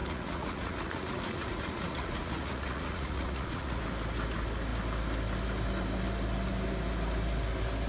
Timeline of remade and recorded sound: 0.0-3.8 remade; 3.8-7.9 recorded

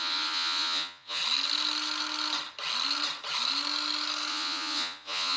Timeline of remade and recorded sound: 0.0-1.2 remade; 1.2-4.3 recorded; 4.3-5.4 remade

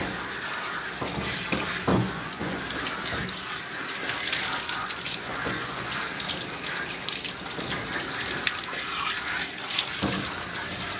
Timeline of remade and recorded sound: 0.0-1.9 recorded; 1.9-2.6 remade; 2.6-4.8 recorded; 4.8-6.0 remade; 6.0-11.0 recorded

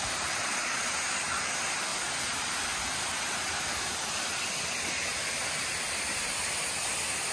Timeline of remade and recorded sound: 0.0-0.4 recorded; 0.4-0.9 remade; 0.9-7.3 recorded

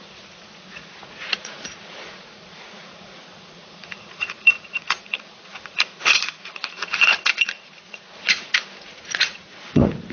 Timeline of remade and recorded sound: 0.0-10.1 remade

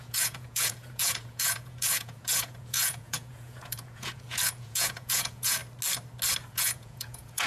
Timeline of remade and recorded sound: 0.0-5.6 remade; 5.6-6.5 recorded; 6.5-7.5 remade

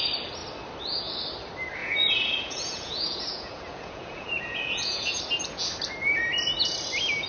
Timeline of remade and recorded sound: 0.0-1.8 recorded; 1.8-5.2 remade; 5.2-7.3 recorded

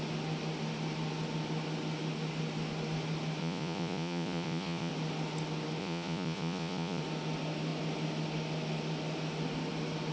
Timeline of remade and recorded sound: 0.0-3.4 recorded; 3.4-4.9 remade; 4.9-5.8 recorded; 5.8-7.0 remade; 7.0-10.1 recorded